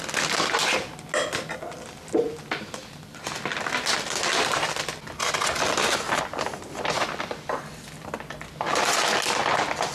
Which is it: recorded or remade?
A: recorded